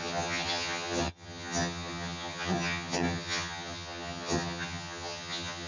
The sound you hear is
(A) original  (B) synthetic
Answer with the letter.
B